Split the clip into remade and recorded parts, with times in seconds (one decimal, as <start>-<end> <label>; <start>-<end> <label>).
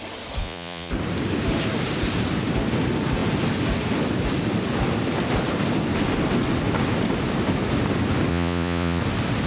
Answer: 0.0-0.4 recorded; 0.4-0.9 remade; 0.9-8.3 recorded; 8.3-9.0 remade; 9.0-9.5 recorded